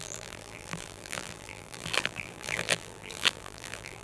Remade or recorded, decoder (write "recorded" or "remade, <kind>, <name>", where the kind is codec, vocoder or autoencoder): remade, vocoder, BigVGAN v2